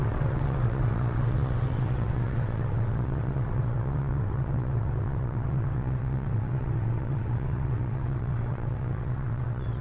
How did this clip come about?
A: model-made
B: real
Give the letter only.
A